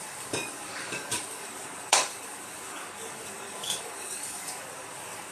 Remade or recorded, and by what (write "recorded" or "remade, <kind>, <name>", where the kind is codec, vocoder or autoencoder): remade, codec, DAC